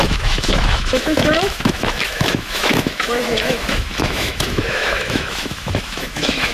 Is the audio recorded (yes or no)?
no